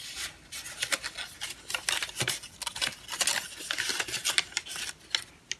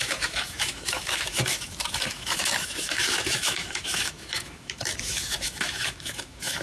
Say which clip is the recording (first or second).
first